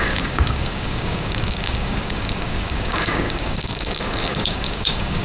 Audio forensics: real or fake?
fake